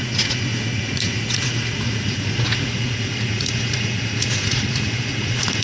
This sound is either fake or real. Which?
fake